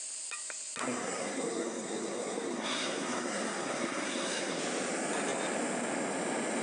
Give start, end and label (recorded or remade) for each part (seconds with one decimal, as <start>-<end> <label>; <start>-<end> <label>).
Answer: 0.0-0.8 recorded; 0.8-4.6 remade; 4.6-6.6 recorded